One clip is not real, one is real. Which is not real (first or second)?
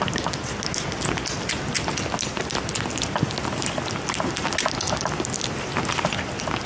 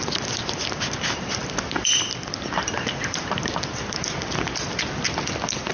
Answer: second